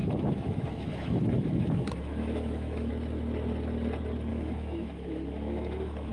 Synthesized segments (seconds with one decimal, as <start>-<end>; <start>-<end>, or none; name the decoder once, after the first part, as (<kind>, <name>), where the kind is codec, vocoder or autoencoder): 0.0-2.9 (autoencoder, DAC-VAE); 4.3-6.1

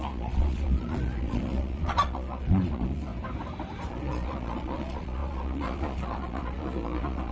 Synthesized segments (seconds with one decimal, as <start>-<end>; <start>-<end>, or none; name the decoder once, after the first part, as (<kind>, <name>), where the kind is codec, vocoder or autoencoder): 0.0-3.1 (vocoder, Vocos); 3.9-7.3

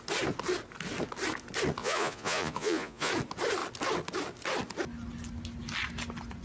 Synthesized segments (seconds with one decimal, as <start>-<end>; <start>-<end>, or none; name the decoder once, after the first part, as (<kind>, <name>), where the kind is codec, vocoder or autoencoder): 1.8-3.1 (vocoder, Vocos)

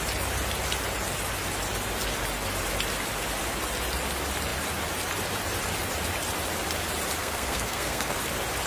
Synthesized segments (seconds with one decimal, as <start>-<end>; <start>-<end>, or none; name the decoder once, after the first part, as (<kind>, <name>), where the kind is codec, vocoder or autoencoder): 7.2-8.2 (codec, SNAC)